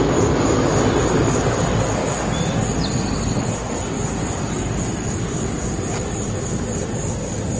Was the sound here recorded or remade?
recorded